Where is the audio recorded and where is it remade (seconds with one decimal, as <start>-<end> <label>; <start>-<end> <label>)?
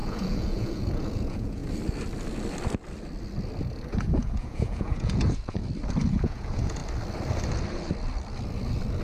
0.0-1.6 remade; 1.6-3.9 recorded; 3.9-5.6 remade; 5.6-6.1 recorded; 6.1-6.8 remade; 6.8-9.0 recorded